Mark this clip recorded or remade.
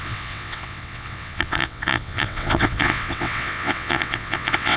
remade